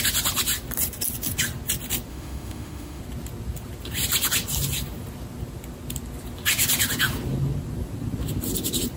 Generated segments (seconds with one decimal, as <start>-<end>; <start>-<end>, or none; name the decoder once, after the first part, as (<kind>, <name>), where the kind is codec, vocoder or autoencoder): 2.1-3.0 (autoencoder, DAC-VAE)